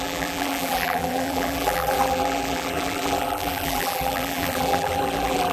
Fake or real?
fake